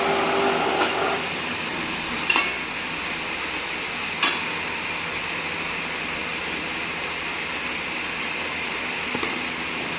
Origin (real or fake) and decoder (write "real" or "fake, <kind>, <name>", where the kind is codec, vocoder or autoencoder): real